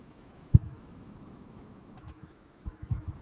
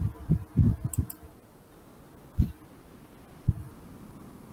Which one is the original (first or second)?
second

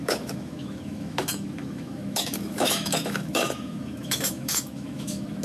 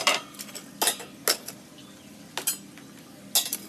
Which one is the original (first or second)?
second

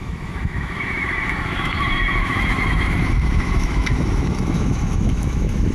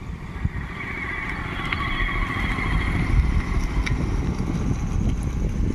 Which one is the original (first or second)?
second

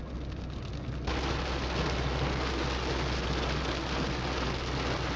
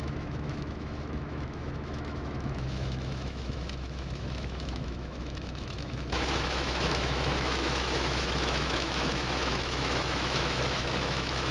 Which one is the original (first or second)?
first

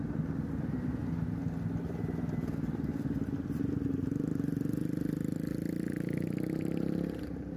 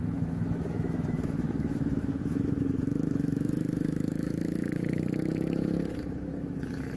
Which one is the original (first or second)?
first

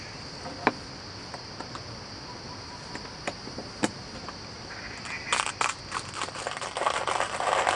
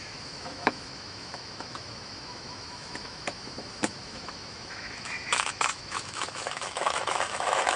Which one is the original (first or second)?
first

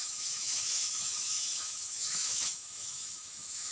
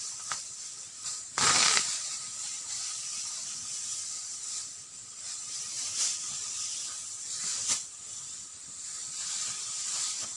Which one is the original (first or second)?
second